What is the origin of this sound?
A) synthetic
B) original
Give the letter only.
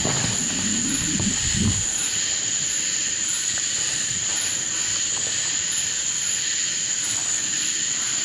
B